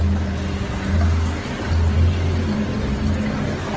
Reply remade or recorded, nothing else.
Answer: recorded